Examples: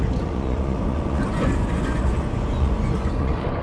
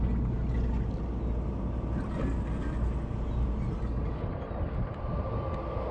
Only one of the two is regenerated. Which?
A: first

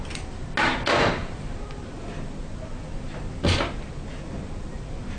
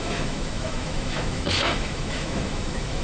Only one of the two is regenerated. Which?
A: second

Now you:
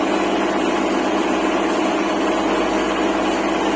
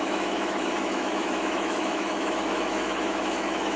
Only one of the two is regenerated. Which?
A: second